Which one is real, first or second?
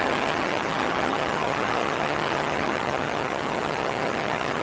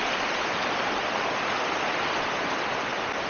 second